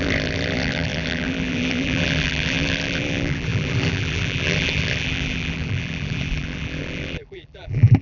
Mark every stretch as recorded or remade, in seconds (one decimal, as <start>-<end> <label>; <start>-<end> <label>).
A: 0.0-8.0 remade